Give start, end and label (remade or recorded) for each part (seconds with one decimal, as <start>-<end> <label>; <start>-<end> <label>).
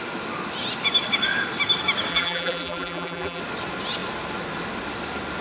0.0-2.1 recorded; 2.1-3.4 remade; 3.4-5.4 recorded